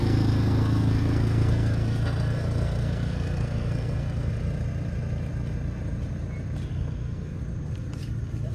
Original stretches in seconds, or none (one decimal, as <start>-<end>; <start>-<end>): 4.3-6.7; 7.4-8.5